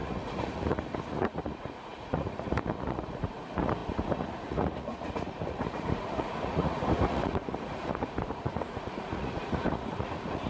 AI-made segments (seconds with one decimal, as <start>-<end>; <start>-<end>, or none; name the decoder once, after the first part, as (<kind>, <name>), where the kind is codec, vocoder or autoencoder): 0.0-10.5 (vocoder, Vocos)